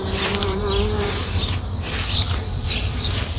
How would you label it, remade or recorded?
remade